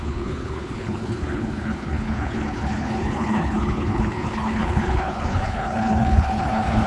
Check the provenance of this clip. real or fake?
fake